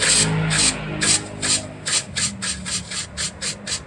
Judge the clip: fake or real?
real